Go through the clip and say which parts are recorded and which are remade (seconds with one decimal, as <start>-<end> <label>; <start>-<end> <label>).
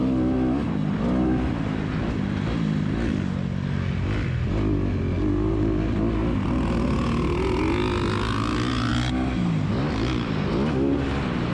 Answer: 0.0-11.5 recorded